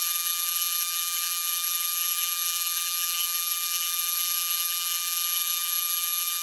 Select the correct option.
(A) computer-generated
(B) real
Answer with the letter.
A